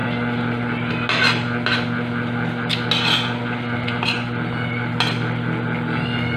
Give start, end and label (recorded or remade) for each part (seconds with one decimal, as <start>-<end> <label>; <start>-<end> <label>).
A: 0.0-6.4 recorded